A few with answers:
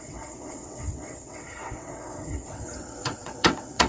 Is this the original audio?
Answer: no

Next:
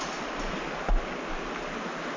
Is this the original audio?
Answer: yes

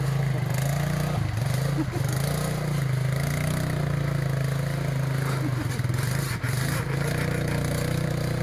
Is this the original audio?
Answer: yes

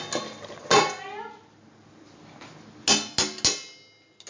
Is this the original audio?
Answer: yes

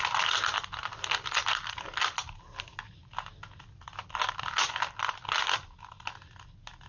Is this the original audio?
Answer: yes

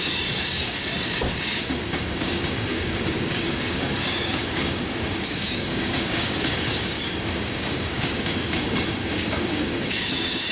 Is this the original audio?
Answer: no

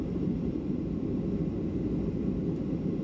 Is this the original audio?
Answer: yes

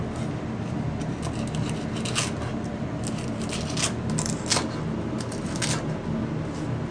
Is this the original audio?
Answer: yes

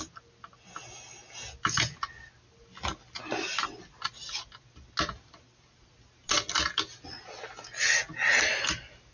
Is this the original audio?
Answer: yes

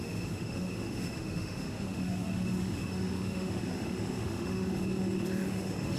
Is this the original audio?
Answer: no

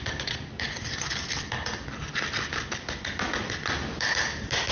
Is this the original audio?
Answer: yes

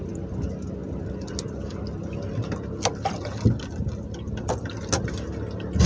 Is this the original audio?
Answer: yes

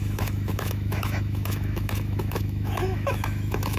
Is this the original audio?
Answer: no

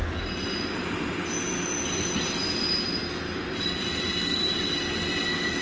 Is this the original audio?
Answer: yes